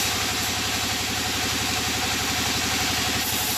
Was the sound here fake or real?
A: real